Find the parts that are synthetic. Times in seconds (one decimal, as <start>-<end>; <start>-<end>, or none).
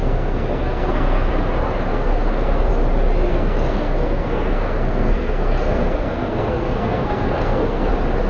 0.0-1.3; 1.9-2.7; 3.3-7.9